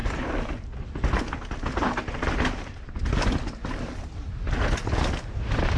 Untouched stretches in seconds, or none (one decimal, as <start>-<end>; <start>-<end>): 0.0-5.8